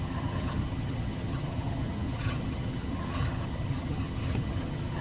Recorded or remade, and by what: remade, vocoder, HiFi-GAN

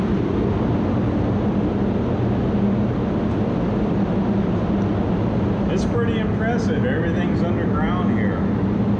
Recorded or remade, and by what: recorded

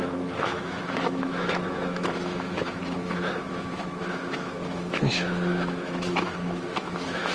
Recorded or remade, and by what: remade, autoencoder, DAC-VAE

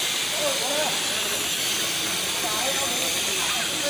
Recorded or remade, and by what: recorded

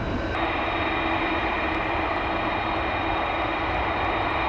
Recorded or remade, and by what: recorded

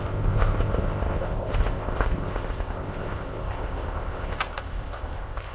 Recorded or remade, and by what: remade, codec, ZipCodec